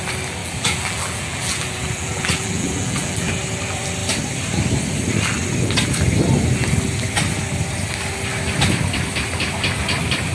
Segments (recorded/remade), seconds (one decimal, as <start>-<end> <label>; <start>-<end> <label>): 0.0-0.4 recorded; 0.4-3.3 remade; 3.3-10.3 recorded